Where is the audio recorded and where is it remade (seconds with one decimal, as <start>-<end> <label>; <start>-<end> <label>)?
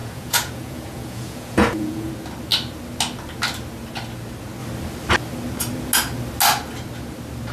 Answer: 0.0-2.1 remade; 2.1-7.5 recorded